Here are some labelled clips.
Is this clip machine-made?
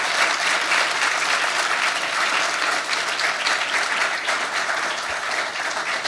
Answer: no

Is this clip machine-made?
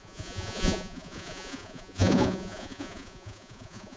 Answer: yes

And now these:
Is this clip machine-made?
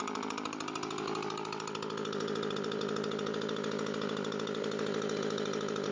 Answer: no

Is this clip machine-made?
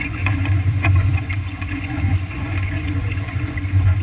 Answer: yes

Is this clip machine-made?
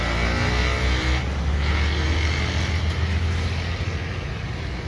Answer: no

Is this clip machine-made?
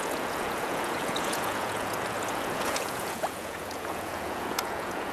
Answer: yes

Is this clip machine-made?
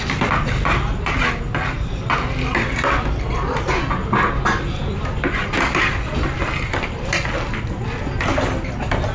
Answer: no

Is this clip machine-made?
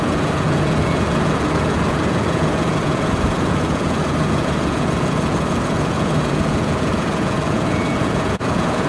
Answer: yes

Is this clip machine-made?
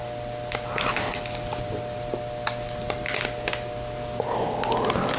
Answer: no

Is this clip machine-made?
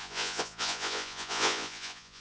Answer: yes